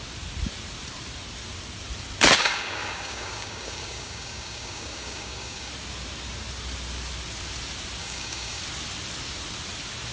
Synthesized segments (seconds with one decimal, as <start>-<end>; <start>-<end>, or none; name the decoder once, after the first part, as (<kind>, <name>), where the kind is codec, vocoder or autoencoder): 2.4-5.7 (codec, DAC); 8.0-8.6